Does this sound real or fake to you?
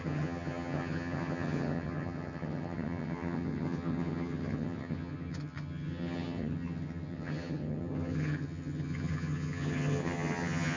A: fake